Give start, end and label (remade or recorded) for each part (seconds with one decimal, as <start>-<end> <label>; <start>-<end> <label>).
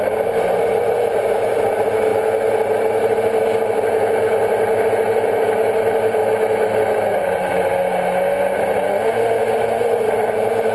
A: 0.0-10.7 recorded